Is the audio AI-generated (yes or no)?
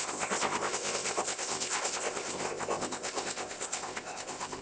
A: yes